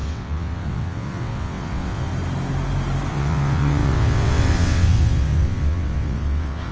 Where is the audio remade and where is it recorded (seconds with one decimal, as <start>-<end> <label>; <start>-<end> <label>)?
0.0-2.1 remade; 2.1-3.1 recorded; 3.1-6.7 remade